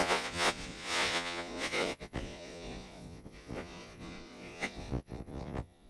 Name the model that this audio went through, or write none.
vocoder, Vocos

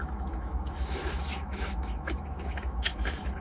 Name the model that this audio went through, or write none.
autoencoder, DAC-VAE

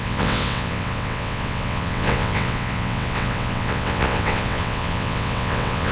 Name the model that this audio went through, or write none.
vocoder, WaveNeXt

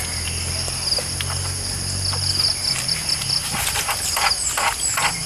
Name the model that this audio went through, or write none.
none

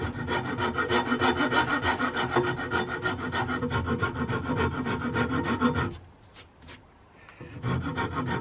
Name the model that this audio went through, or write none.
none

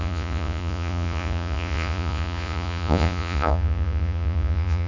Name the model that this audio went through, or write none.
vocoder, Vocos